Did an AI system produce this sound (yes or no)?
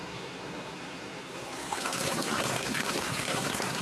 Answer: yes